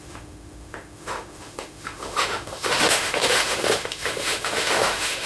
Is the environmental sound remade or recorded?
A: remade